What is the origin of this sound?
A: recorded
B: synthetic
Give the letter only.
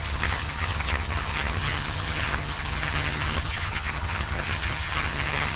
B